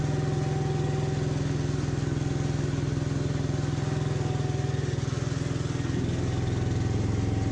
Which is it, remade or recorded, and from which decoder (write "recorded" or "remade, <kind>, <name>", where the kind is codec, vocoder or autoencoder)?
recorded